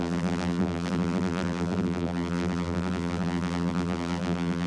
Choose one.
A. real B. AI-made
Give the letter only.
B